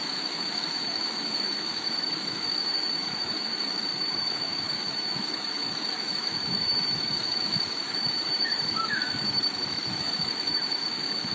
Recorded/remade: remade